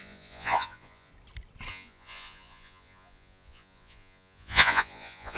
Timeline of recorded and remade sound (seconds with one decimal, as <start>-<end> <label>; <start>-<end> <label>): 0.0-1.1 remade; 1.1-1.7 recorded; 1.7-5.4 remade